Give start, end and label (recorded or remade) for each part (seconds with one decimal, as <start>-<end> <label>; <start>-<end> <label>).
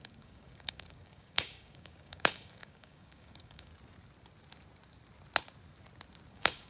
0.0-3.7 remade; 3.7-6.3 recorded; 6.3-6.7 remade